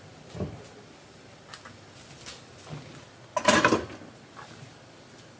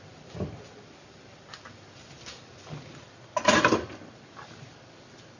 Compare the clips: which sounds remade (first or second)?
second